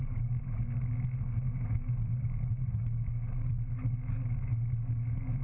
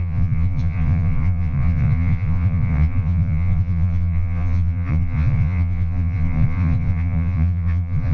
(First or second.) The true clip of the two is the first